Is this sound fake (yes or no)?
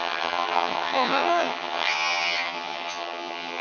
yes